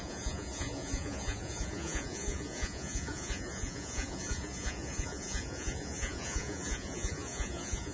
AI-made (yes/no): yes